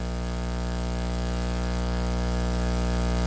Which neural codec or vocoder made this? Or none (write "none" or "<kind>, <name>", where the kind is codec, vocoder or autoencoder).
vocoder, BigVGAN v2